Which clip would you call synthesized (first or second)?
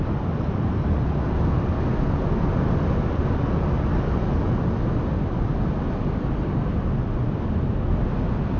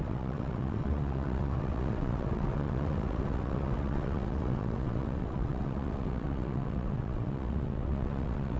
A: second